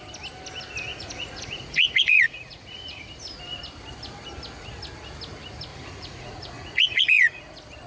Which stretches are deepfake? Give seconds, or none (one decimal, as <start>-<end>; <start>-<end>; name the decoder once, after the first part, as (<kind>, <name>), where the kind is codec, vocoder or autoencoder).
0.9-3.0 (vocoder, Vocos); 5.7-7.4